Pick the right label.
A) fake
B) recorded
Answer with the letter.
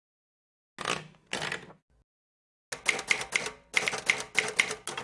B